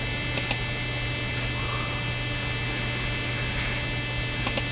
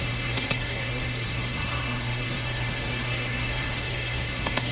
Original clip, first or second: first